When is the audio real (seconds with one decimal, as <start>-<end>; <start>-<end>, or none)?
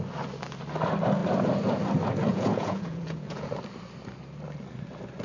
0.0-2.3; 3.5-5.2